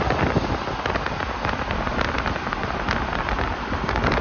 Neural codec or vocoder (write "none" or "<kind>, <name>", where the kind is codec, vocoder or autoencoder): none